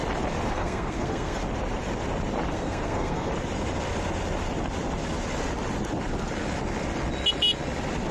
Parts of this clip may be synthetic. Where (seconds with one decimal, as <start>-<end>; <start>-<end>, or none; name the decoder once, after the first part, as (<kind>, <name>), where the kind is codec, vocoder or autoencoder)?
0.5-1.4 (codec, SNAC); 2.5-3.3

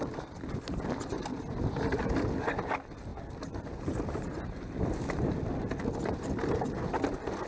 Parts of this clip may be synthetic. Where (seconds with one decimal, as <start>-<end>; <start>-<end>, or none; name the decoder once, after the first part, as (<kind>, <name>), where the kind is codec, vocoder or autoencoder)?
none

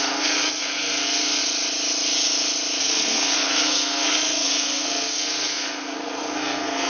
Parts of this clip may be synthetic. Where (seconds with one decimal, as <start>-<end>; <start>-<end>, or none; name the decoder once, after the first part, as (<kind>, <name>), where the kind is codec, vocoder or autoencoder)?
0.0-1.4 (codec, SNAC); 2.8-6.9

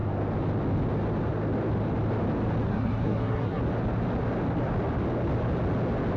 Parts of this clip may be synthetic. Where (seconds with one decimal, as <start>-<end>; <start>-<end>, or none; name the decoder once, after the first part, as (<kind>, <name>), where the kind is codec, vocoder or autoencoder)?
2.7-3.6 (codec, SNAC)

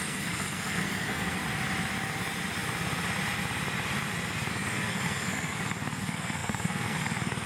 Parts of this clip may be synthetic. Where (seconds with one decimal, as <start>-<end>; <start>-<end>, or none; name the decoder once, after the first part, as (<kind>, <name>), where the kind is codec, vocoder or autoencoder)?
0.0-1.4 (codec, SNAC); 4.5-7.5

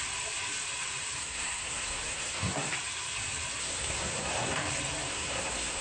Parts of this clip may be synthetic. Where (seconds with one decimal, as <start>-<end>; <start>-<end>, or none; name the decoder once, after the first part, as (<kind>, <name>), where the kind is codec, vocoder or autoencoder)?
1.2-2.7 (codec, SNAC); 3.6-4.5; 5.1-5.8